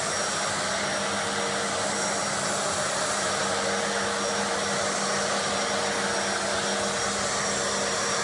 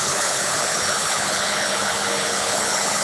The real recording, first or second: first